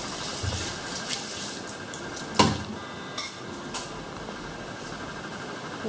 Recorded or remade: recorded